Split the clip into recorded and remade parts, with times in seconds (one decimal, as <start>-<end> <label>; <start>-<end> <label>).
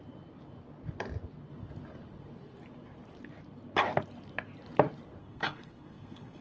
0.0-5.2 recorded; 5.2-6.4 remade